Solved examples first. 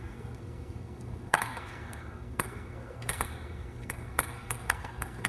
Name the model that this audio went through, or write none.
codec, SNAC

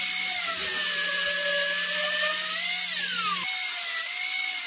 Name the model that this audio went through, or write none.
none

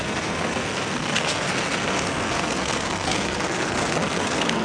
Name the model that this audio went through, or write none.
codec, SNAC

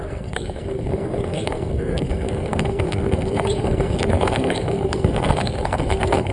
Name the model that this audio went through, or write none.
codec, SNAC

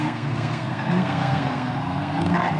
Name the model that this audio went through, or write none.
codec, SNAC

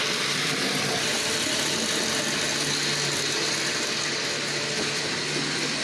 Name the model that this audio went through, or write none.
none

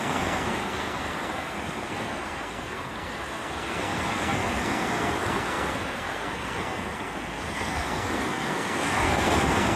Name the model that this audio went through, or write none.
codec, SNAC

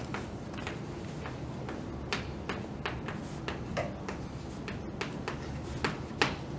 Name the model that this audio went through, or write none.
none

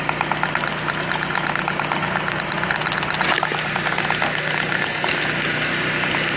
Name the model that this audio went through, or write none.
none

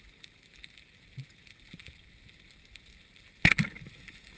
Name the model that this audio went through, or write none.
none